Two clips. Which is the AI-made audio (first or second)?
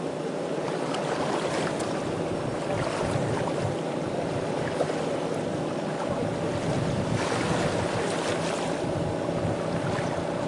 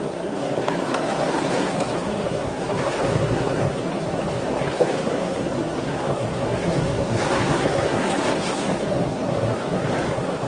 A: second